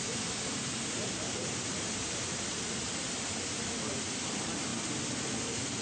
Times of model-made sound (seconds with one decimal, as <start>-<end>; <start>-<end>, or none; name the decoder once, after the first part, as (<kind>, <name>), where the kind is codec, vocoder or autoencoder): none